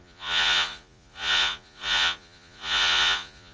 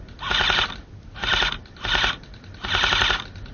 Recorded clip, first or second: second